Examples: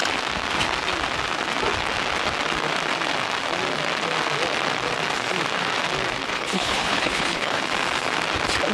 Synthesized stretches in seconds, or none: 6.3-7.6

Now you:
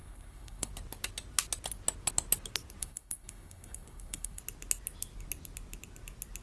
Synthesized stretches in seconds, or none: 0.0-0.7; 2.8-4.4